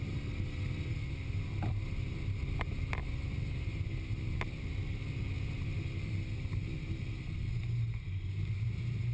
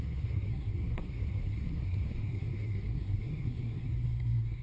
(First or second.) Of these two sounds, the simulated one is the second